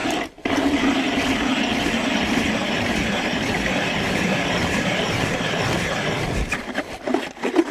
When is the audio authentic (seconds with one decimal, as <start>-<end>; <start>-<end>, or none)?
0.0-2.0; 5.5-7.7